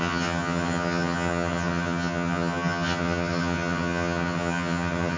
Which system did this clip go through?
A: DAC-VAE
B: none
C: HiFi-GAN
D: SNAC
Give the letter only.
C